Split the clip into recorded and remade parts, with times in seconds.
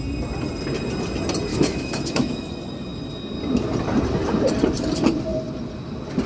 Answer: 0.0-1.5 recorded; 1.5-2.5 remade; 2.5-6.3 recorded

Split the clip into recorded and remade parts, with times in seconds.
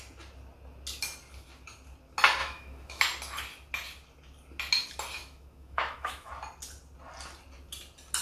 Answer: 0.0-2.4 recorded; 2.4-3.0 remade; 3.0-5.2 recorded; 5.2-6.3 remade; 6.3-8.2 recorded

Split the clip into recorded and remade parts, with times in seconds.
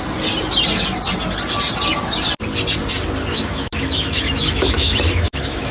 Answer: 0.0-3.3 recorded; 3.3-5.7 remade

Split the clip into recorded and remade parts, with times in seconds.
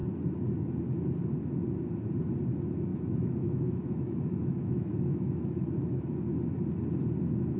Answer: 0.0-2.9 recorded; 2.9-6.0 remade; 6.0-7.6 recorded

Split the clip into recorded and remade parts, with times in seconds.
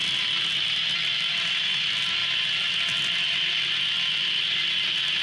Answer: 0.0-5.2 recorded